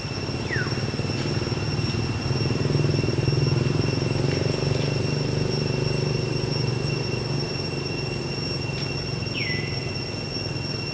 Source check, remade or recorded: recorded